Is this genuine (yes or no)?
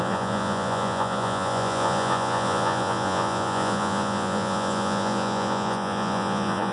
no